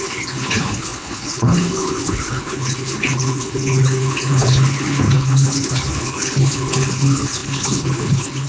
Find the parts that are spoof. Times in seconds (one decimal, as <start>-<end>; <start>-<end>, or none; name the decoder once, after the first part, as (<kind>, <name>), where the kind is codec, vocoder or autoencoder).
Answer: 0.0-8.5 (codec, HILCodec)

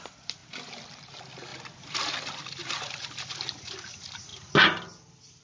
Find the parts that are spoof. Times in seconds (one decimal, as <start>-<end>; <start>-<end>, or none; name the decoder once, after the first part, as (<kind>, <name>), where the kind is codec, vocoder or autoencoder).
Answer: 4.3-5.4 (vocoder, BigVGAN v2)

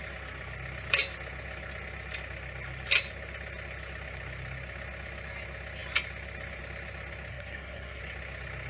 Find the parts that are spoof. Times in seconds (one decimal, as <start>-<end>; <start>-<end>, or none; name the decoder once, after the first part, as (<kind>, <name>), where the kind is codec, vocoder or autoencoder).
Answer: 7.3-8.0 (codec, SNAC)

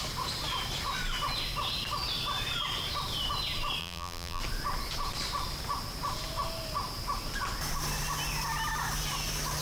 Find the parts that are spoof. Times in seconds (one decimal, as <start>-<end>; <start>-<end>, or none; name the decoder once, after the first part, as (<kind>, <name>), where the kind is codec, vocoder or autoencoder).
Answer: 3.8-4.4 (vocoder, BigVGAN v2)

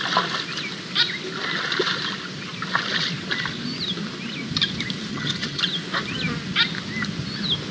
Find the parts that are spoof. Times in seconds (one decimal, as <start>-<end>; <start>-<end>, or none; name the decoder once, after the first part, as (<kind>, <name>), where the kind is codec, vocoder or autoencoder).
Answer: 5.1-5.6 (vocoder, HiFi-GAN)

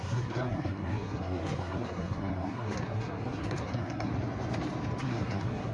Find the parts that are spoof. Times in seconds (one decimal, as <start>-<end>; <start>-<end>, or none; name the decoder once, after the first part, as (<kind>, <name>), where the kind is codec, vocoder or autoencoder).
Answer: 0.0-4.1 (codec, SNAC); 5.0-5.7